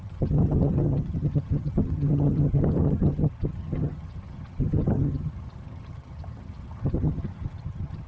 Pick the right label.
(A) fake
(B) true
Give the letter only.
A